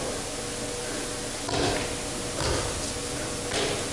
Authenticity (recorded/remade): recorded